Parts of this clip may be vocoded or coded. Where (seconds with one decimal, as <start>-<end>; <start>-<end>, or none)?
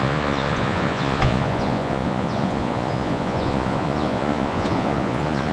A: 0.0-5.5